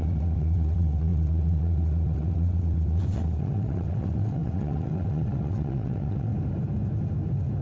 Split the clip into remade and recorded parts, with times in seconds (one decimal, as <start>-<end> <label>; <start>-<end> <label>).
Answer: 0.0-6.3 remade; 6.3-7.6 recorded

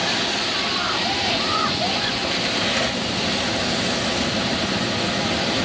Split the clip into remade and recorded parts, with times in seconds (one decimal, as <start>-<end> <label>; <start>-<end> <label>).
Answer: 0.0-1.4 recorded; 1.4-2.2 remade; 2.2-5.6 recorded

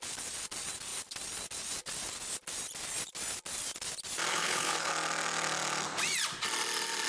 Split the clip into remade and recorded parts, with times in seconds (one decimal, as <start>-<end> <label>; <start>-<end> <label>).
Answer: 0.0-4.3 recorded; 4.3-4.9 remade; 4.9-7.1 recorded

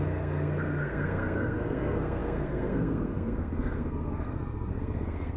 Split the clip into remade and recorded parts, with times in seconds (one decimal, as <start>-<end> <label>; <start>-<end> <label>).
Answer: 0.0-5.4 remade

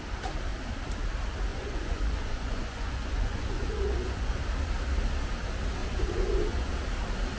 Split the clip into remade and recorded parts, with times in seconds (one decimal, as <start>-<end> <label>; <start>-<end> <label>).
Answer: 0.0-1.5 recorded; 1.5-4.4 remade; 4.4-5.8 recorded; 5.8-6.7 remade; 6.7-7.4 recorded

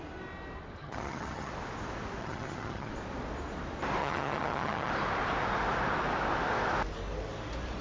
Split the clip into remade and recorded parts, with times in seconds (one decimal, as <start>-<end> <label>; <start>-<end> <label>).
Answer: 0.0-0.8 recorded; 0.8-1.5 remade; 1.5-2.2 recorded; 2.2-2.9 remade; 2.9-4.0 recorded; 4.0-4.9 remade; 4.9-7.8 recorded

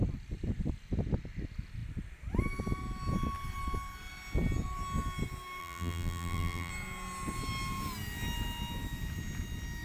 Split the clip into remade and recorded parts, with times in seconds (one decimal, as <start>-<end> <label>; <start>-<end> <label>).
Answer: 0.0-5.6 recorded; 5.6-6.7 remade; 6.7-9.8 recorded